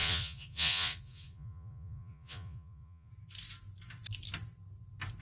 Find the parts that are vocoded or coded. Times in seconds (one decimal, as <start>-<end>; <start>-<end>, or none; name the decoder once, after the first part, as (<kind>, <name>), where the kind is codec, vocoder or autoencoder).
0.0-3.1 (vocoder, Vocos)